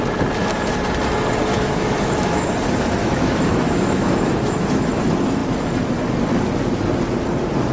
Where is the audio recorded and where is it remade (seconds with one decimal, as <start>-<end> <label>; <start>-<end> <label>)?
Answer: 0.0-1.5 recorded; 1.5-2.5 remade; 2.5-3.0 recorded; 3.0-5.0 remade; 5.0-7.7 recorded